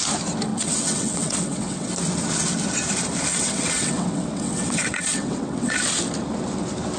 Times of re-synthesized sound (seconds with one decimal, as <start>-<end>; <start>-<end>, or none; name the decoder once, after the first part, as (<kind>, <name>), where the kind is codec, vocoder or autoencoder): 0.5-1.9 (vocoder, WaveNeXt); 3.3-5.7